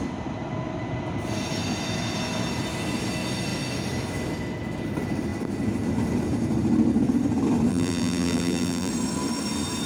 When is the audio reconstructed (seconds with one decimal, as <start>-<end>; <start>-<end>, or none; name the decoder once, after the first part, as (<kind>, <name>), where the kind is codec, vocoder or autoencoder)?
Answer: 7.7-8.9 (vocoder, BigVGAN v2)